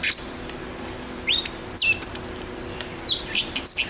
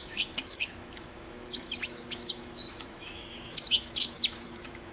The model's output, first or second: second